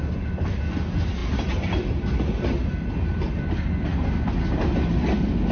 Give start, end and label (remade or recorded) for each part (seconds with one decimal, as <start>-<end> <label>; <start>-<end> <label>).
0.0-5.5 recorded